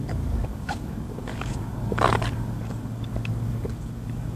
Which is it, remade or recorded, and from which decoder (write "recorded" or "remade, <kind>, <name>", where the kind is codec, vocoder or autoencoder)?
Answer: remade, codec, DAC